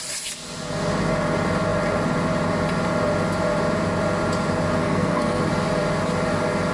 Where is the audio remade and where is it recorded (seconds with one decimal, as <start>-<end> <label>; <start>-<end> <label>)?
0.0-4.8 recorded; 4.8-5.4 remade; 5.4-6.7 recorded